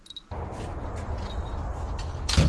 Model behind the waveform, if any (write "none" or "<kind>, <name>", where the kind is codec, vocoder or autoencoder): none